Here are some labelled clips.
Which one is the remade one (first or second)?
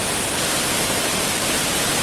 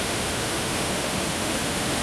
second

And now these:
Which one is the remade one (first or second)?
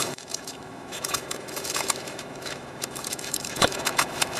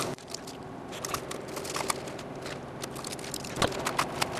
first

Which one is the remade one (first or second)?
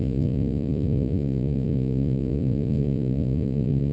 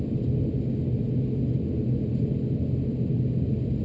first